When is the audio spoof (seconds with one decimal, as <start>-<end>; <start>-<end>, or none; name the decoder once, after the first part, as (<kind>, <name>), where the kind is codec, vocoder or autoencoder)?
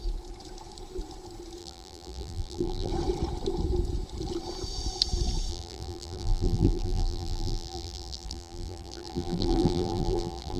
1.6-2.9 (vocoder, BigVGAN v2); 5.5-10.6